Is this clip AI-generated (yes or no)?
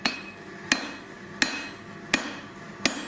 no